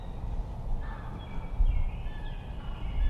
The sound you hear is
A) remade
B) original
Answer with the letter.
B